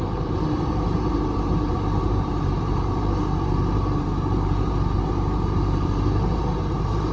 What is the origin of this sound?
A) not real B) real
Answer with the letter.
A